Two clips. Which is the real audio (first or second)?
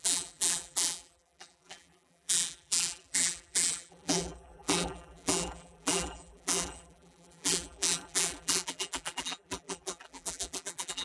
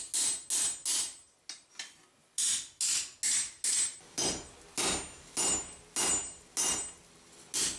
second